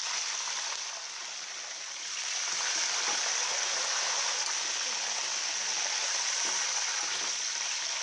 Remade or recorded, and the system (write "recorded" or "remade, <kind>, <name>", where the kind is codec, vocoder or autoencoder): recorded